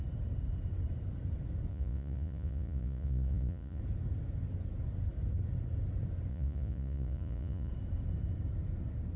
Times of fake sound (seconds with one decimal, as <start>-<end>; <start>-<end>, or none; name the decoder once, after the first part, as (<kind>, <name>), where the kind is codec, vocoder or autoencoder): 1.7-3.8 (vocoder, Vocos); 6.3-7.7